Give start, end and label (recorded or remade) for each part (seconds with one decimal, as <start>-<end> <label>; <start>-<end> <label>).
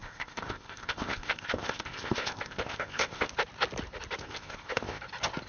0.0-3.3 remade; 3.3-4.2 recorded; 4.2-5.0 remade; 5.0-5.5 recorded